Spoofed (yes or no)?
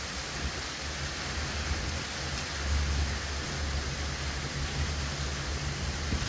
no